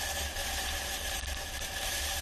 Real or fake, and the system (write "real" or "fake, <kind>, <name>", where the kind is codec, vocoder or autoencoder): fake, vocoder, BigVGAN v2